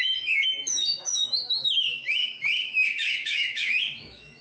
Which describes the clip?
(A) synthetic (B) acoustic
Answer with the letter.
A